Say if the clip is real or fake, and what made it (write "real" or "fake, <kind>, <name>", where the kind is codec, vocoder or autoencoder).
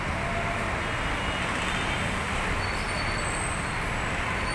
real